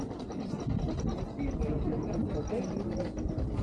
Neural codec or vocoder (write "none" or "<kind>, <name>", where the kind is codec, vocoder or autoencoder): none